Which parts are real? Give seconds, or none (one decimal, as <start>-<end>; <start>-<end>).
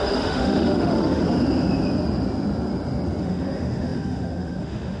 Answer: 1.2-3.2